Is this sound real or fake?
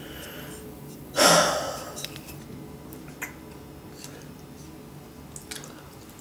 real